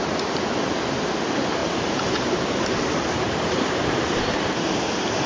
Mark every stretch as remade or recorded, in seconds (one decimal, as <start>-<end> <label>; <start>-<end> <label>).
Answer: 0.0-1.6 recorded; 1.6-4.8 remade; 4.8-5.3 recorded